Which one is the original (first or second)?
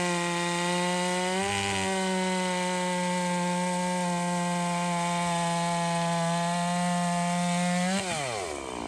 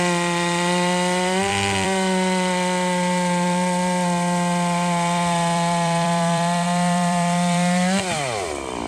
first